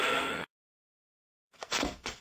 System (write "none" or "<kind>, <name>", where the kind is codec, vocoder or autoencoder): codec, SNAC